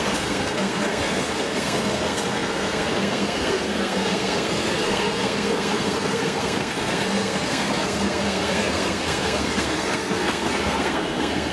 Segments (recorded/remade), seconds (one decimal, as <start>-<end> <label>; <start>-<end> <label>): 0.0-11.5 remade